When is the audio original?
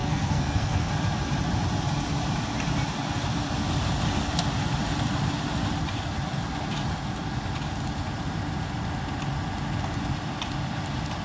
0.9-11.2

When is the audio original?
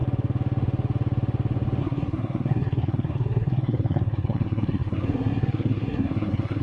0.0-1.8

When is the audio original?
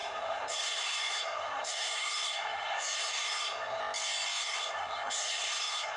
3.8-4.4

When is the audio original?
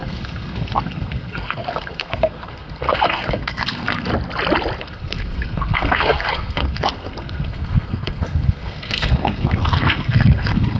4.1-4.8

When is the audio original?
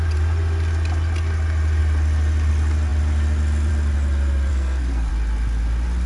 0.0-4.5; 5.1-6.1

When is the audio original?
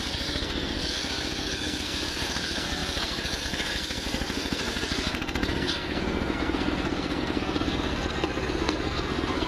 none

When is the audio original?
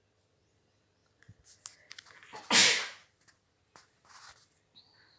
0.0-5.2